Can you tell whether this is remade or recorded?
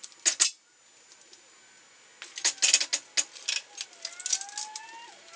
recorded